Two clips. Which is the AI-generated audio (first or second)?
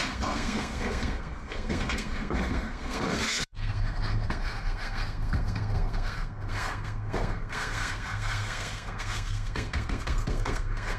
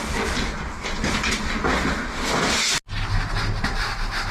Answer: first